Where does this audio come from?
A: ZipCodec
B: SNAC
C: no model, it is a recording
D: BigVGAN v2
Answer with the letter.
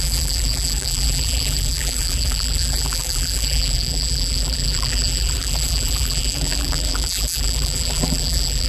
D